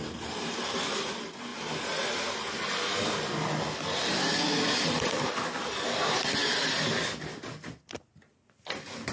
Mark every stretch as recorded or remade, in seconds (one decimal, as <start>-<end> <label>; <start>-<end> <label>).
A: 0.0-9.1 recorded